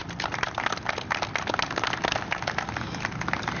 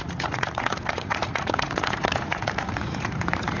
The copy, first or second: second